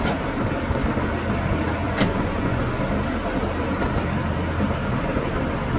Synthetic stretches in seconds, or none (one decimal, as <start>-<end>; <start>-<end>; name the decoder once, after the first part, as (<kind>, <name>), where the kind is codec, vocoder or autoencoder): 1.8-2.8 (vocoder, Vocos)